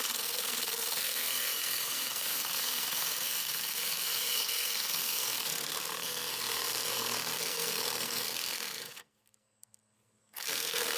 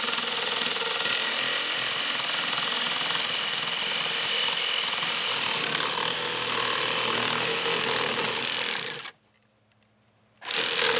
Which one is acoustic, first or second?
second